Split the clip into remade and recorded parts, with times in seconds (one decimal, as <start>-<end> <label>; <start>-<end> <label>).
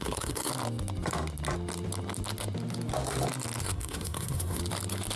0.0-0.5 remade; 0.5-3.6 recorded; 3.6-4.6 remade; 4.6-5.2 recorded